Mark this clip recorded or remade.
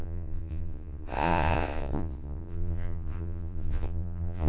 remade